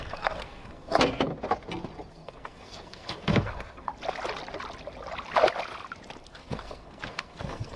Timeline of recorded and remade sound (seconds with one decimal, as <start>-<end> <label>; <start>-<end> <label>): 0.0-1.3 remade; 1.3-2.1 recorded; 2.1-3.9 remade; 3.9-6.3 recorded; 6.3-7.8 remade